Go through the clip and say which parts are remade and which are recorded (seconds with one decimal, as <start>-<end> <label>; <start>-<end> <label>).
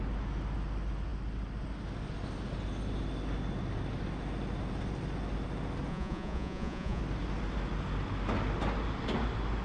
0.0-5.9 recorded; 5.9-7.0 remade; 7.0-9.6 recorded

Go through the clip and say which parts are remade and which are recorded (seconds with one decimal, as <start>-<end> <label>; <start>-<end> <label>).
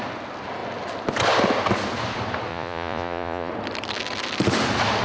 0.0-2.5 recorded; 2.5-3.5 remade; 3.5-5.0 recorded